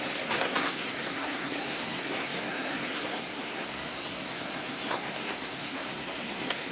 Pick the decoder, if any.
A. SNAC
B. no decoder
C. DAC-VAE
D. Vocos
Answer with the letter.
A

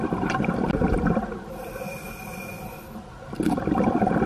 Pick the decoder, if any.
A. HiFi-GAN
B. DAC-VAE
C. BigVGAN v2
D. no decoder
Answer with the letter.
D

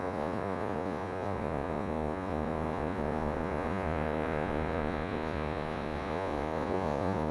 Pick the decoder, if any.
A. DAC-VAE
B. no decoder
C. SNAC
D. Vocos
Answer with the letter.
D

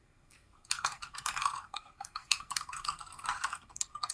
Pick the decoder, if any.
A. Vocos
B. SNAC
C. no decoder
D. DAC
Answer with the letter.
B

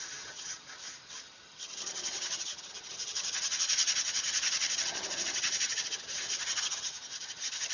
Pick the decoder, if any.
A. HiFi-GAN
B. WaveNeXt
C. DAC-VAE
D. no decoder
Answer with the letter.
A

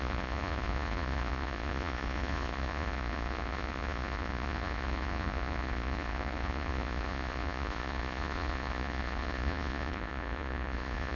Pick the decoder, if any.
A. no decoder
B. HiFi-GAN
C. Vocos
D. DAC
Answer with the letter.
C